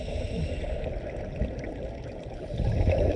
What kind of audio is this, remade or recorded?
recorded